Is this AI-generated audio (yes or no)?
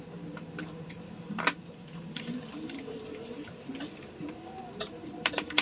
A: yes